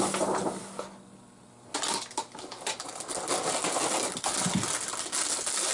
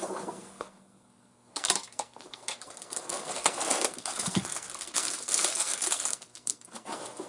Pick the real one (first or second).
first